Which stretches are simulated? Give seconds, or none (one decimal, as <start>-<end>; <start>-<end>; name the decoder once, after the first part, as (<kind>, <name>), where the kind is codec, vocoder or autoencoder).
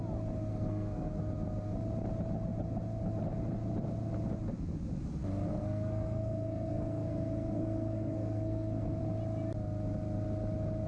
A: 0.5-1.2 (codec, SNAC); 5.5-9.0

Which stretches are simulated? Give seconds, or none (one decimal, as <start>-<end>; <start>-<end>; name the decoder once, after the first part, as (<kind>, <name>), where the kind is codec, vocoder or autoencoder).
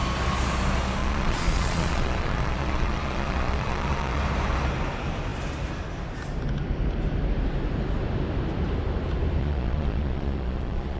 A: 1.0-4.2 (vocoder, Vocos); 9.4-11.0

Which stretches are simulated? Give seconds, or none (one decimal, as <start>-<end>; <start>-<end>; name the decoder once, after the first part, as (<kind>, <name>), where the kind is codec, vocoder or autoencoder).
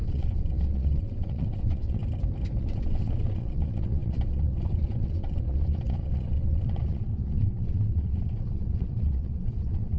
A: 0.0-2.0 (vocoder, WaveNeXt); 2.6-10.0